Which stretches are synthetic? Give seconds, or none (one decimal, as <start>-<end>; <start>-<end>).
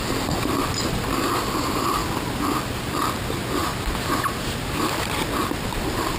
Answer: 3.6-5.0